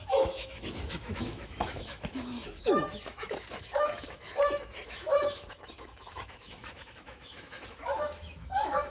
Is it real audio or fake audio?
fake